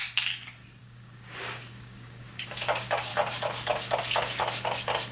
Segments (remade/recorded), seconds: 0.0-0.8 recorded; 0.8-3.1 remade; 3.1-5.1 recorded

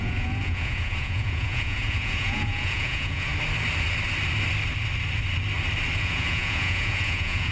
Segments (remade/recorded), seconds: 0.0-3.3 remade; 3.3-6.0 recorded; 6.0-7.5 remade

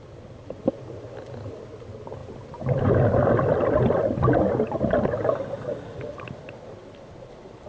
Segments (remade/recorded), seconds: 0.0-7.7 recorded

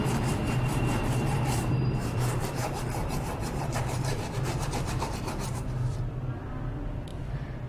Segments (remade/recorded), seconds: 0.0-0.4 recorded; 0.4-2.5 remade; 2.5-3.0 recorded; 3.0-4.1 remade; 4.1-7.1 recorded; 7.1-7.7 remade

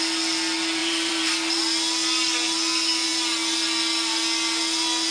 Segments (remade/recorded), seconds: 0.0-0.8 recorded; 0.8-1.6 remade; 1.6-5.1 recorded